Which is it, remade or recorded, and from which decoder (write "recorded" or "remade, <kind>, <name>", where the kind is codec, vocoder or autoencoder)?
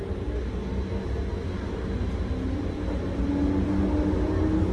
recorded